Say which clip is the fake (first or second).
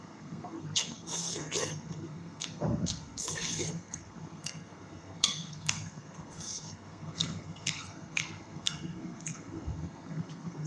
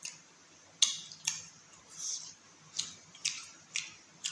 first